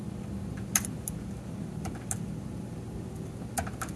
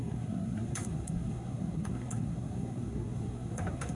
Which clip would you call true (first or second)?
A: first